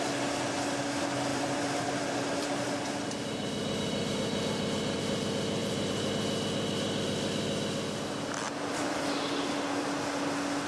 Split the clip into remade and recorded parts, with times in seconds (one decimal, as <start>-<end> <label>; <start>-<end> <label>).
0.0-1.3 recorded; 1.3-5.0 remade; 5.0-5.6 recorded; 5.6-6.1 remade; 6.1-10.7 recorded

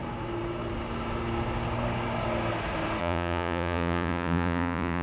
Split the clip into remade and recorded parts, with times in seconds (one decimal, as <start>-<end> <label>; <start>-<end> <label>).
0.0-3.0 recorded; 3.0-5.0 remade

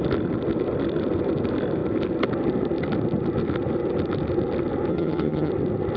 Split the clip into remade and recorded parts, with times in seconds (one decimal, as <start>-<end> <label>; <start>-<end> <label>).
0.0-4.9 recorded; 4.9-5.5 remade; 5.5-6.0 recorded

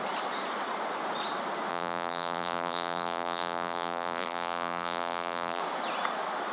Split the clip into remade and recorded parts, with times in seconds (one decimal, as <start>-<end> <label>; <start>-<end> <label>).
0.0-1.7 recorded; 1.7-5.6 remade; 5.6-6.5 recorded